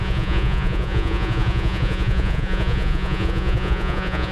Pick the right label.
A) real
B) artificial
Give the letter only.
B